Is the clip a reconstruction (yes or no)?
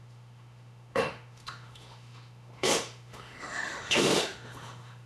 yes